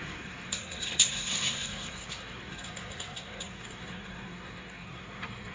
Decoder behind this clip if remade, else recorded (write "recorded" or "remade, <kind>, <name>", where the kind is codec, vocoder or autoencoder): remade, codec, SNAC